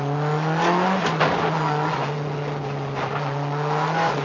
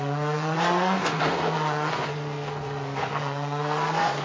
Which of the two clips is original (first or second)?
first